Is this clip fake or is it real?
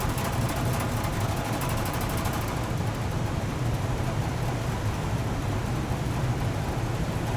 real